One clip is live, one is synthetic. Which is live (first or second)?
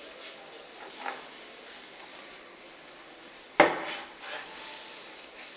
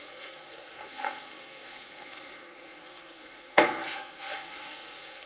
first